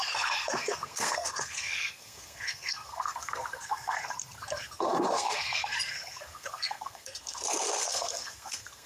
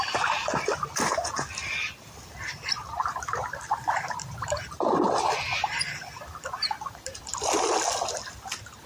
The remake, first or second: first